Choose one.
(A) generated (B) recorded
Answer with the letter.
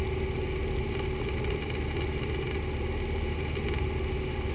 B